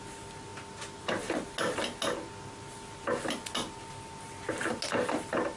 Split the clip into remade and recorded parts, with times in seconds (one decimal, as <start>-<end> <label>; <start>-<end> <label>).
0.0-5.6 recorded